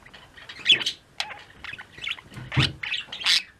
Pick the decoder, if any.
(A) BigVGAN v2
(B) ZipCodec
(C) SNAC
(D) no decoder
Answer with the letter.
D